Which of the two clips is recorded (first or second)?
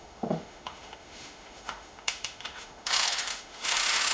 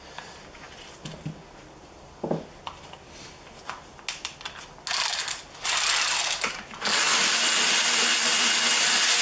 second